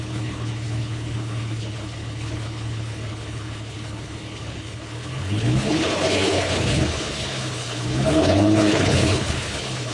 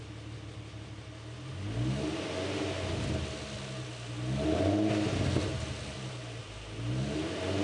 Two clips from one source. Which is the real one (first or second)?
second